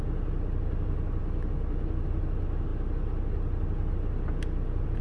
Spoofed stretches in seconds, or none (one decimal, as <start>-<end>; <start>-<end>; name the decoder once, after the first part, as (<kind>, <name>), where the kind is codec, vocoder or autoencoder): none